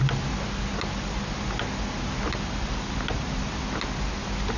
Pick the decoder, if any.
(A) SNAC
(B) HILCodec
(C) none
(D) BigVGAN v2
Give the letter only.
C